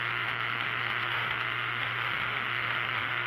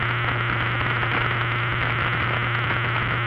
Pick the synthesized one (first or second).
first